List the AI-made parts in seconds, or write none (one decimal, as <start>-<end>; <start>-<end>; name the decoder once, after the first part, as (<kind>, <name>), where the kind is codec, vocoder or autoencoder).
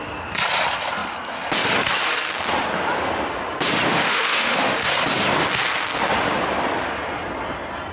3.9-4.9 (autoencoder, DAC-VAE)